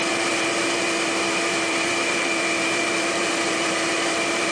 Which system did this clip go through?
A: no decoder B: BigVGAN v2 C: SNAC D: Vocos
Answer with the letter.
B